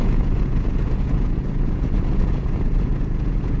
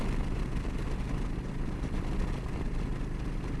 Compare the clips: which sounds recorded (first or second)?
second